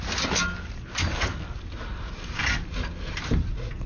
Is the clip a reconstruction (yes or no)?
no